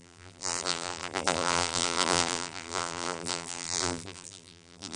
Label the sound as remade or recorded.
remade